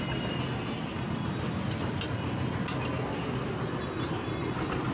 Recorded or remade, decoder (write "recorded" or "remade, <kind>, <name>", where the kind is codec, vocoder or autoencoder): recorded